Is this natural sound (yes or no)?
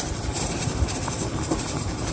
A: no